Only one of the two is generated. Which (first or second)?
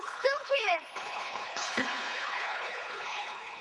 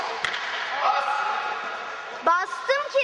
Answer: first